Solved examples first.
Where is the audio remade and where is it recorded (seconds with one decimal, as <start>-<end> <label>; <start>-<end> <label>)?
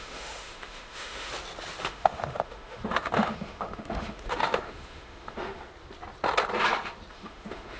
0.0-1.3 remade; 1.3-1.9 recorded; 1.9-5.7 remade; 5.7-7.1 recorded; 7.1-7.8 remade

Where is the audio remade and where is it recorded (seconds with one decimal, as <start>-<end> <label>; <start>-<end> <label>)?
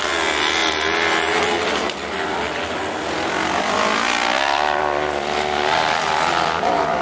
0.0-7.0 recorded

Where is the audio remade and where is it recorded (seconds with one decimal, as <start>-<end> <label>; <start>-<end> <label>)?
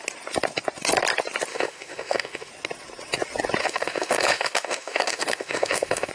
0.0-1.5 recorded; 1.5-2.5 remade; 2.5-3.6 recorded; 3.6-6.1 remade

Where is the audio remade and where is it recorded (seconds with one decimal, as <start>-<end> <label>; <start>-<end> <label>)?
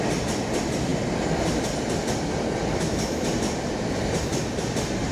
0.0-5.1 recorded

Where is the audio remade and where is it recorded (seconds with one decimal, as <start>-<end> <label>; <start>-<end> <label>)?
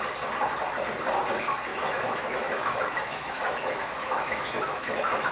0.0-1.7 recorded; 1.7-5.3 remade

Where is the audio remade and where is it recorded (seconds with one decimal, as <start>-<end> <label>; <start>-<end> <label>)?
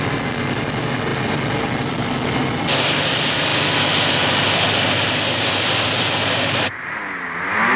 0.0-7.8 recorded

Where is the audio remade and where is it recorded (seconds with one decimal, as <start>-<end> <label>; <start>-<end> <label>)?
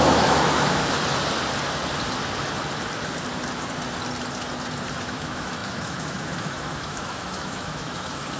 0.0-0.8 remade; 0.8-4.9 recorded; 4.9-8.4 remade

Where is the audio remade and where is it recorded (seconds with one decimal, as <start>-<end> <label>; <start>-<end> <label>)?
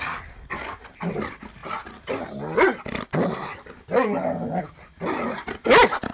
0.0-6.1 recorded